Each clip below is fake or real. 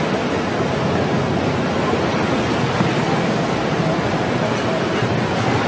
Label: real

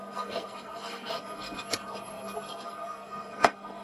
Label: fake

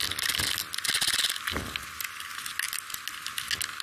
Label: real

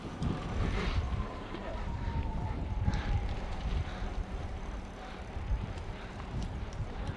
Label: fake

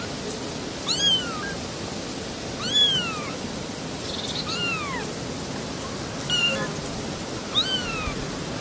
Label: real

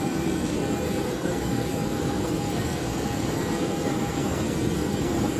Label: fake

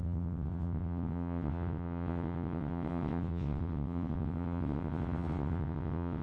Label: fake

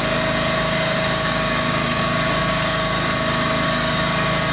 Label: fake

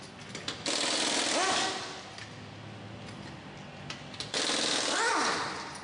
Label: real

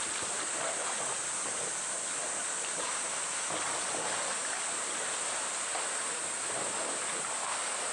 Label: real